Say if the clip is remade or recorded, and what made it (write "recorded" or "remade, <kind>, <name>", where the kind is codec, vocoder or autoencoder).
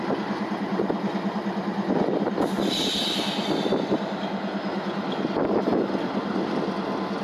recorded